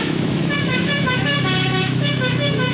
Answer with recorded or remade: remade